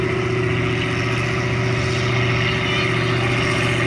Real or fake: real